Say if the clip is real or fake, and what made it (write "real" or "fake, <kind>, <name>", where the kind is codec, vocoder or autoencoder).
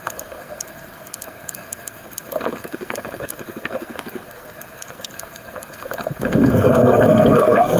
fake, codec, SNAC